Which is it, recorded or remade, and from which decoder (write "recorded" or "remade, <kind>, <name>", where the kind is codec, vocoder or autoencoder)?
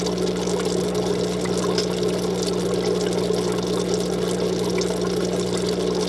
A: recorded